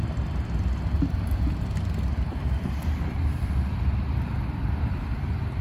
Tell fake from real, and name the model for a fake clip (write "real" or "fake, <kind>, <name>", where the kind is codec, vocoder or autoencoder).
fake, vocoder, BigVGAN v2